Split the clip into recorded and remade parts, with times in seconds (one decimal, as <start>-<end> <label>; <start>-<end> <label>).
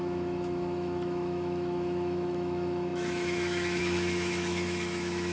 0.0-5.3 remade